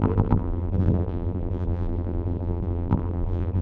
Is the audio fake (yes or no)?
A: yes